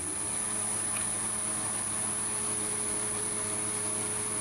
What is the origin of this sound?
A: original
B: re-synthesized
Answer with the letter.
A